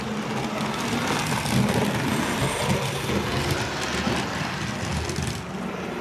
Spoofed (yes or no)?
no